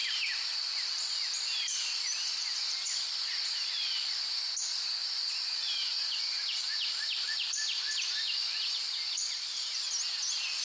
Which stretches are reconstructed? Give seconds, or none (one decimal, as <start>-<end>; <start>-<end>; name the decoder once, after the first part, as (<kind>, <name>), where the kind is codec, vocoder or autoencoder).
0.0-4.4 (vocoder, BigVGAN v2); 5.0-9.9